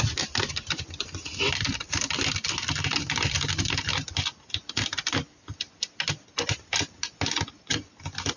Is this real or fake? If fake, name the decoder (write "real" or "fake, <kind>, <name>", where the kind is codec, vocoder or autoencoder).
real